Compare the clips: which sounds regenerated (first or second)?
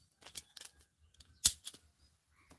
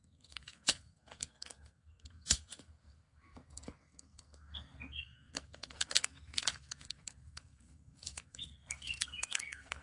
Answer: second